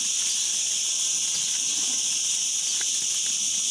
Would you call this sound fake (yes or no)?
no